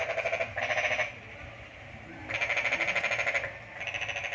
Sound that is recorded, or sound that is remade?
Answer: recorded